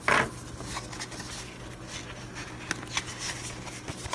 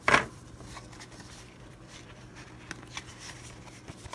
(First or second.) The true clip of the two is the first